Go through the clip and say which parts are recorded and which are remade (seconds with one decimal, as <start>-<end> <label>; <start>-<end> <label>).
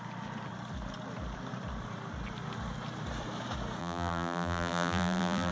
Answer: 0.0-3.8 recorded; 3.8-5.5 remade